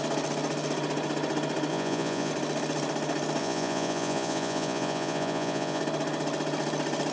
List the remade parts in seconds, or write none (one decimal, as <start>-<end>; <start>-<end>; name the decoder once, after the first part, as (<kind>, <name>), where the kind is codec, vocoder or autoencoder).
1.7-2.3 (vocoder, Vocos); 3.4-5.8